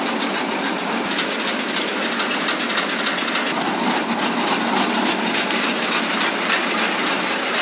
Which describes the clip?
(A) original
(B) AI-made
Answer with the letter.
A